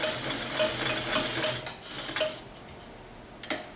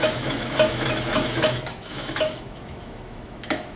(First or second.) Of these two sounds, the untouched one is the first